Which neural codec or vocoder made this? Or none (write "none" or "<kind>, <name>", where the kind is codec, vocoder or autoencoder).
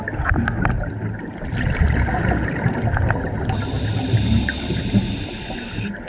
none